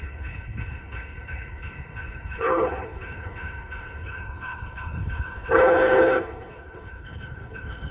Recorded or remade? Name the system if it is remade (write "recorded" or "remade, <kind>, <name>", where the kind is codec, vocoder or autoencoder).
remade, codec, HILCodec